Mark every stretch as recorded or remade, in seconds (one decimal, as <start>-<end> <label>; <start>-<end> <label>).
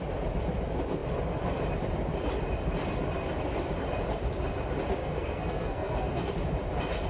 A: 0.0-5.0 recorded; 5.0-6.3 remade; 6.3-7.1 recorded